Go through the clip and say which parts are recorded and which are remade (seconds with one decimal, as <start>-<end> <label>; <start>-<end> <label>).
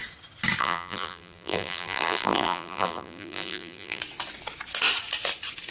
0.0-0.6 recorded; 0.6-4.0 remade; 4.0-5.7 recorded